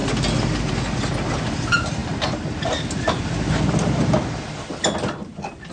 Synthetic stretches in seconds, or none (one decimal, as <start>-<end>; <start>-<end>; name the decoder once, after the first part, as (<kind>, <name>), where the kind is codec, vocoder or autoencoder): none